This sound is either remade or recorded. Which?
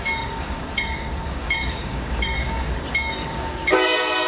remade